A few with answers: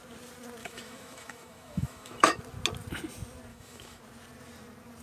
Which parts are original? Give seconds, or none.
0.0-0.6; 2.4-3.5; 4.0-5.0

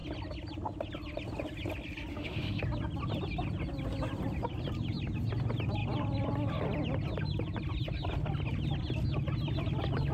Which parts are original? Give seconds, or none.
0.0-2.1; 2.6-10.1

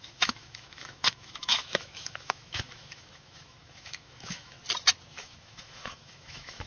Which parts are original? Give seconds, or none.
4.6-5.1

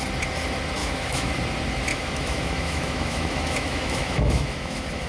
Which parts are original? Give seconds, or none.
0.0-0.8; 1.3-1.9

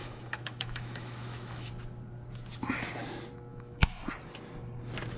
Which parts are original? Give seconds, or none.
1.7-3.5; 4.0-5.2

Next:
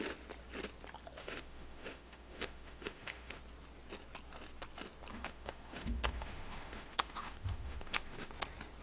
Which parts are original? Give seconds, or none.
0.0-1.2; 3.4-5.1; 8.3-8.8